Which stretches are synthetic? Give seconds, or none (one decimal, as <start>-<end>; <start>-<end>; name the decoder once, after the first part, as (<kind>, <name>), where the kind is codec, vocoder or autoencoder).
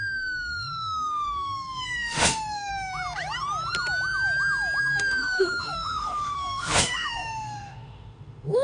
0.0-2.7 (autoencoder, DAC-VAE); 4.8-8.6